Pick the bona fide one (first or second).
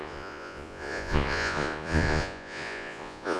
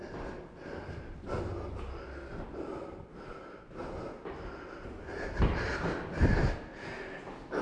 second